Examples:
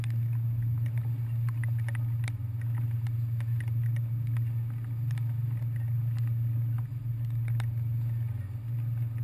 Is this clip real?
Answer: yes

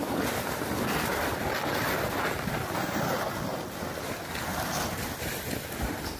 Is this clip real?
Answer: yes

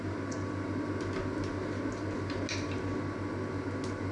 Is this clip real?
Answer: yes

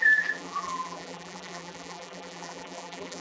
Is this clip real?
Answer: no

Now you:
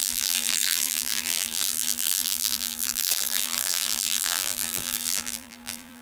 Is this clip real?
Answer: no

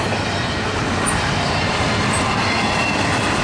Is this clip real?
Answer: no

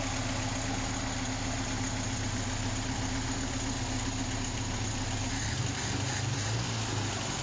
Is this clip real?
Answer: yes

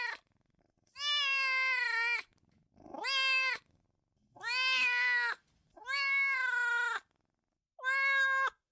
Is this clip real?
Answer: yes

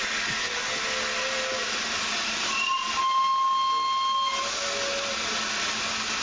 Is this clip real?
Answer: yes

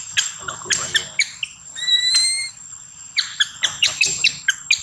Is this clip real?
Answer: yes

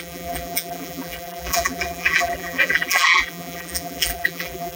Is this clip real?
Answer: no